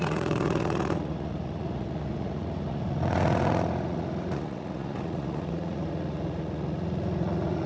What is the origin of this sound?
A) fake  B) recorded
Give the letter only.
A